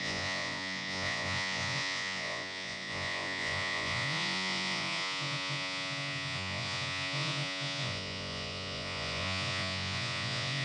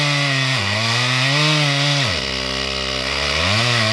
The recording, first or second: second